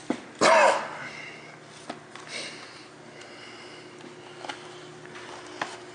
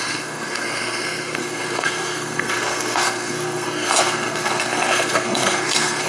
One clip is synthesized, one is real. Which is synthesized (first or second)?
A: second